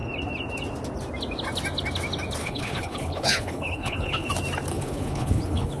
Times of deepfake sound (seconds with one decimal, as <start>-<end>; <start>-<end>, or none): 2.4-4.3; 4.7-5.8